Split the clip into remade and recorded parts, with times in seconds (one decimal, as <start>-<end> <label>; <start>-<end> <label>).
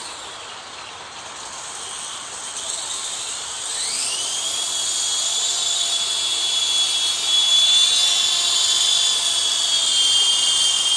0.0-11.0 recorded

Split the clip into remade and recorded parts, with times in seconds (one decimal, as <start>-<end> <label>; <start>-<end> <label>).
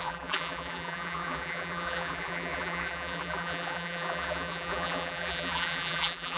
0.0-6.4 remade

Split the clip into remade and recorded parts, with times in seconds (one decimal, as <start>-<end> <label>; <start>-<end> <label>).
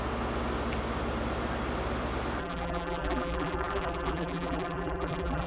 0.0-2.4 recorded; 2.4-5.5 remade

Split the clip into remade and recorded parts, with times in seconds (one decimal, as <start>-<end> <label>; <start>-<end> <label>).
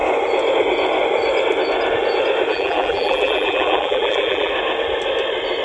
0.0-2.5 recorded; 2.5-4.5 remade; 4.5-5.6 recorded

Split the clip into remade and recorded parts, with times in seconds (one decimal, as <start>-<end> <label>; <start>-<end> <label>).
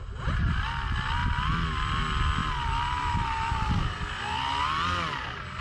0.0-1.2 recorded; 1.2-2.0 remade; 2.0-5.6 recorded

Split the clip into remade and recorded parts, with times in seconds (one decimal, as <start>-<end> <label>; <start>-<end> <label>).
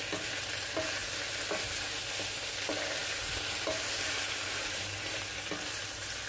0.0-6.3 recorded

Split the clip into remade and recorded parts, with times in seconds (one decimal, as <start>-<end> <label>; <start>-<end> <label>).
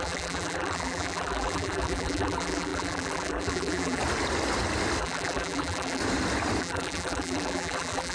0.0-4.0 remade; 4.0-5.0 recorded; 5.0-6.0 remade; 6.0-6.6 recorded; 6.6-8.1 remade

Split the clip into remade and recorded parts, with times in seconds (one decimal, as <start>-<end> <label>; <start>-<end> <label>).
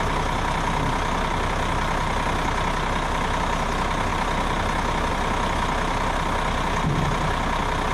0.0-7.9 recorded